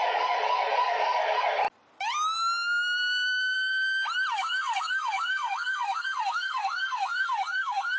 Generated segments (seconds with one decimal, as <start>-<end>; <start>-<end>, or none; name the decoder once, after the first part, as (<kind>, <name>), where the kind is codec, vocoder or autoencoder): 0.0-1.6 (codec, SNAC); 4.3-8.0